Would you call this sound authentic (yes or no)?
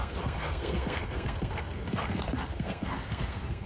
no